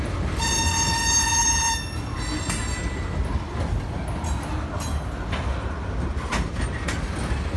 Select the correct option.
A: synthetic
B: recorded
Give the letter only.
B